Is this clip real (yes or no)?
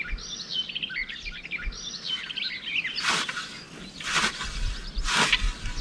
yes